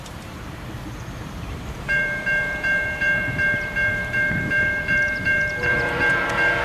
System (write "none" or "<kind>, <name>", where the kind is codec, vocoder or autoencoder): vocoder, BigVGAN v2